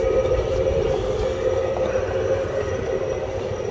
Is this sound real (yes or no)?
no